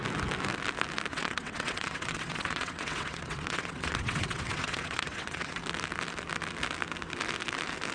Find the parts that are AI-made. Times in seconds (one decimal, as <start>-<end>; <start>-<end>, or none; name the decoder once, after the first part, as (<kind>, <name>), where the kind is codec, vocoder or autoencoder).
1.1-5.6 (vocoder, WaveNeXt)